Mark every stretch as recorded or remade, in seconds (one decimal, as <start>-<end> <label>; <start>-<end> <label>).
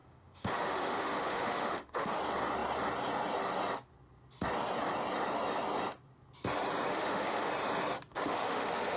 0.0-2.2 remade; 2.2-6.9 recorded; 6.9-7.5 remade; 7.5-8.1 recorded; 8.1-9.0 remade